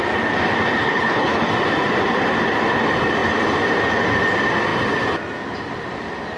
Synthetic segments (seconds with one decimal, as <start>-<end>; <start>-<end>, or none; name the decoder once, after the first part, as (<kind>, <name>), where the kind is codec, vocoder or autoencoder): 0.8-1.5 (codec, HILCodec)